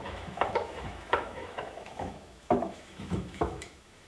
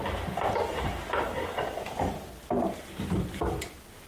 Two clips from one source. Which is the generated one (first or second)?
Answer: first